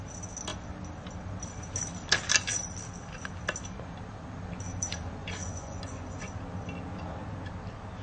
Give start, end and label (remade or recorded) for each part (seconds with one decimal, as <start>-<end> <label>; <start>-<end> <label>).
0.0-5.2 recorded; 5.2-6.3 remade; 6.3-8.0 recorded